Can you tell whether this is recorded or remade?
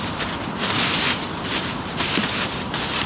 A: remade